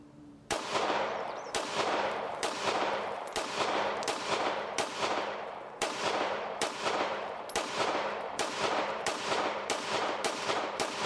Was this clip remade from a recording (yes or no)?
yes